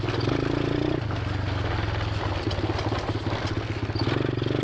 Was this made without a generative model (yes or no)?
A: yes